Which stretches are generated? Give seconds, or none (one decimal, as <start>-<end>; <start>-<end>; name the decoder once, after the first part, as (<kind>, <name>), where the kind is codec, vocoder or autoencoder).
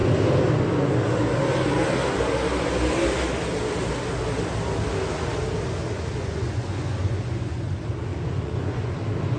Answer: 6.1-7.7 (vocoder, Vocos); 8.1-8.9